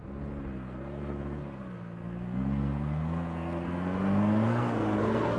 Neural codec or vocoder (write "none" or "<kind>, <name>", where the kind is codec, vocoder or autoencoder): codec, SNAC